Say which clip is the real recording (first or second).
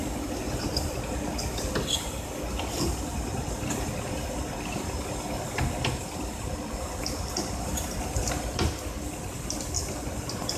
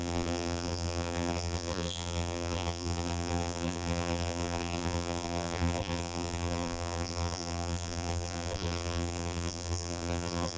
first